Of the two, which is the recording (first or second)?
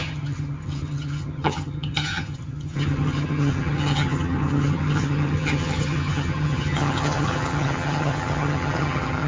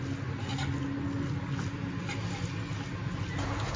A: second